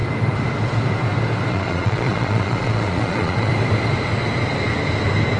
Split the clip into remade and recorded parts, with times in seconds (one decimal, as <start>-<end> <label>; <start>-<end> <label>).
0.0-1.5 recorded; 1.5-3.5 remade; 3.5-5.4 recorded